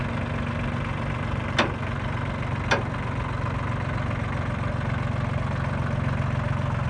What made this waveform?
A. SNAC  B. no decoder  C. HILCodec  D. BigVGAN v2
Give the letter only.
B